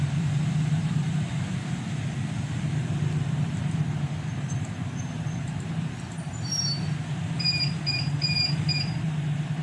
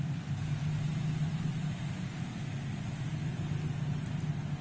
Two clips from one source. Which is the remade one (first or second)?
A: first